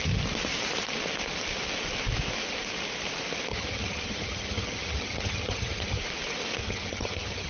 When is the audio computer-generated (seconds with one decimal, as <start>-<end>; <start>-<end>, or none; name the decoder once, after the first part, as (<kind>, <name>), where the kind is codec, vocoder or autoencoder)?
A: 3.5-6.0 (vocoder, HiFi-GAN); 6.6-7.5

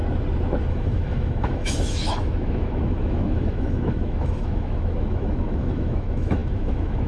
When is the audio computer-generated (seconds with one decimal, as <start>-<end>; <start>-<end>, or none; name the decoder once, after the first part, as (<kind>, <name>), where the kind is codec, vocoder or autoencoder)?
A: 0.7-7.1 (autoencoder, DAC-VAE)

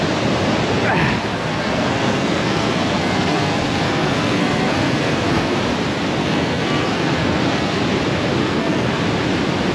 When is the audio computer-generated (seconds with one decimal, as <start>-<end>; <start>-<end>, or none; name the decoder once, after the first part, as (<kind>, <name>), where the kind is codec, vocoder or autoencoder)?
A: 1.3-5.6 (codec, SNAC); 6.2-7.8; 8.4-9.0

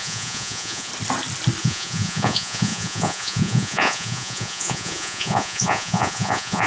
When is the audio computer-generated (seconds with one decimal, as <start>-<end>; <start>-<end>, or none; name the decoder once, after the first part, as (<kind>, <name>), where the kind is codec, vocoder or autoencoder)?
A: 0.0-0.9 (vocoder, Vocos); 1.6-6.7

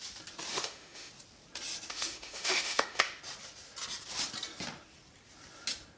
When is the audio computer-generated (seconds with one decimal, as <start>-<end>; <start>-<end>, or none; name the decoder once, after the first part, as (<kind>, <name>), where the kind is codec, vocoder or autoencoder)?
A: 0.5-1.1 (autoencoder, DAC-VAE); 1.9-3.2